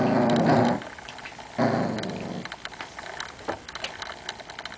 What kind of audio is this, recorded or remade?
recorded